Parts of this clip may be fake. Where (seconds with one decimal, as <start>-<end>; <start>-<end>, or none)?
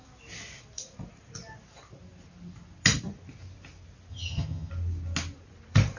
4.1-4.7